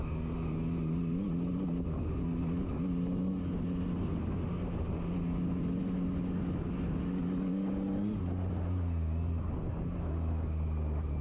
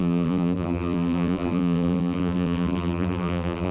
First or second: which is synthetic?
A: second